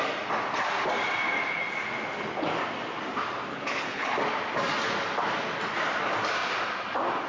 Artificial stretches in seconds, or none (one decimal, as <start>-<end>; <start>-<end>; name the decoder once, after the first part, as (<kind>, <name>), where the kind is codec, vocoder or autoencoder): 3.5-4.1 (codec, HILCodec)